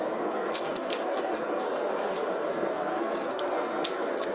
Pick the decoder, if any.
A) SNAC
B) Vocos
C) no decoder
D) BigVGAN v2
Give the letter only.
A